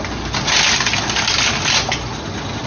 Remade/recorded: recorded